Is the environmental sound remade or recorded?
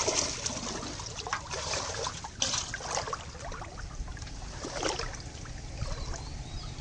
recorded